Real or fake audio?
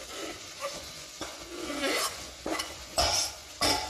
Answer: fake